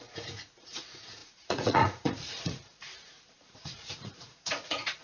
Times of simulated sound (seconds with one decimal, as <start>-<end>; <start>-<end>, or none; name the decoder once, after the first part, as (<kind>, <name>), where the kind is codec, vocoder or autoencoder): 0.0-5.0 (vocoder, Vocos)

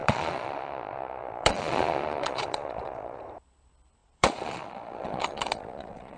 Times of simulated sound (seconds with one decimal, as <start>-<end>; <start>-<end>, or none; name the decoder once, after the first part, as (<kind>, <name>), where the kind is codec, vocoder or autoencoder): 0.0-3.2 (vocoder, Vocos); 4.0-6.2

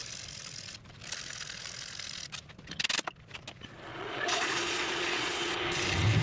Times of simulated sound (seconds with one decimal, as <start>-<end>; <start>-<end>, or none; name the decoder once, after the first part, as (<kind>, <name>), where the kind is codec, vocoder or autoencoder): 3.9-5.6 (vocoder, Vocos)